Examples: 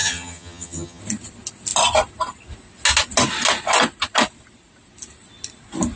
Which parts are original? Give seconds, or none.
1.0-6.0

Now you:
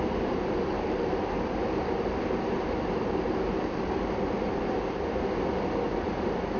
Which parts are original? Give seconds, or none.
0.0-0.7; 4.7-6.6

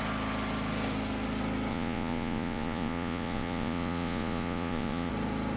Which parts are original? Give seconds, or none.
0.0-1.7; 5.1-5.6

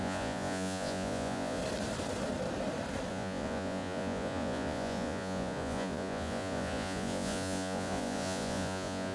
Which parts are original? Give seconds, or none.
1.6-3.1